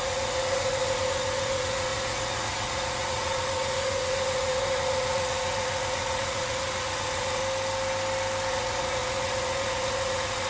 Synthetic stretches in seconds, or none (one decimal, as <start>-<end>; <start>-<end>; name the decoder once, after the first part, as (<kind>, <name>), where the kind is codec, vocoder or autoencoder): 0.0-7.4 (vocoder, Vocos); 8.5-10.5